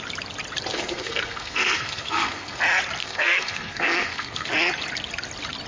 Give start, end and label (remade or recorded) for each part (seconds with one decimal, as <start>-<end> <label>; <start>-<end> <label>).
0.0-0.7 recorded; 0.7-2.6 remade; 2.6-3.0 recorded; 3.0-4.5 remade; 4.5-5.7 recorded